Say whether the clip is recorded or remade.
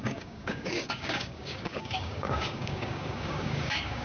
remade